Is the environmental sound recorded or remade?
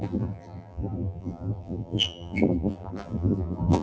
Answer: remade